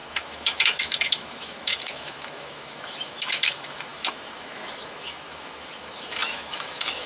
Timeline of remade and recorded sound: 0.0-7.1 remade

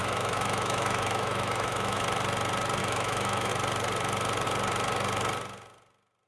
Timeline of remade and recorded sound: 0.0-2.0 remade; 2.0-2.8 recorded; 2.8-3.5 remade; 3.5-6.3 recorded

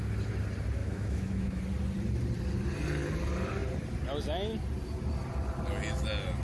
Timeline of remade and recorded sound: 0.0-0.8 recorded; 0.8-1.6 remade; 1.6-6.4 recorded

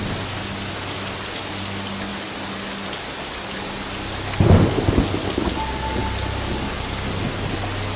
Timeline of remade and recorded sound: 0.0-8.0 recorded

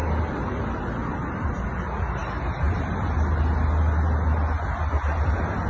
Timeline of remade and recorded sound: 0.0-5.7 recorded

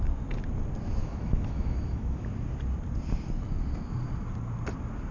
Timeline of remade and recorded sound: 0.0-1.0 recorded; 1.0-2.3 remade; 2.3-5.1 recorded

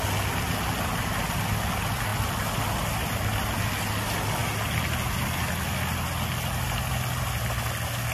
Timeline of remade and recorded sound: 0.0-8.1 recorded